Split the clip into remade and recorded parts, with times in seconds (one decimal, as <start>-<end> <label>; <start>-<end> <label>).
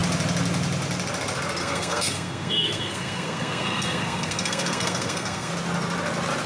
0.0-1.6 recorded; 1.6-5.5 remade; 5.5-6.5 recorded